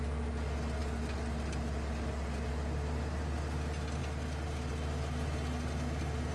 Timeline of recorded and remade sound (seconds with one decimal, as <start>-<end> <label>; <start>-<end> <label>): 0.0-6.3 recorded